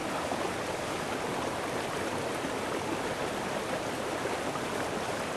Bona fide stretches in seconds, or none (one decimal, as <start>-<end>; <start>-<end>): 0.0-5.4